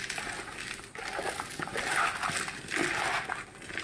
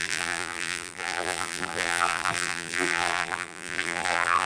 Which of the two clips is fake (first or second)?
second